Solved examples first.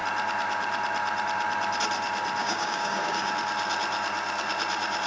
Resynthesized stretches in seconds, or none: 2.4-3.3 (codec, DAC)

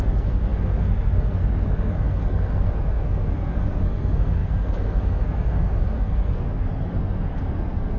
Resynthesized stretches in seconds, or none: 0.0-8.0 (codec, SNAC)

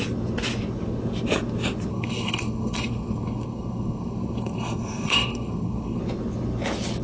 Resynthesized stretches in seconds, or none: 1.9-6.0 (codec, SNAC)

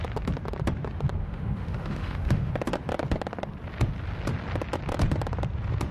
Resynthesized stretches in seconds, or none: 1.2-2.5 (autoencoder, DAC-VAE)